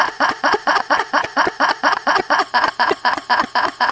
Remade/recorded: remade